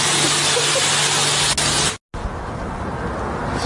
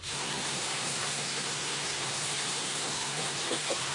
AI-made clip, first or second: second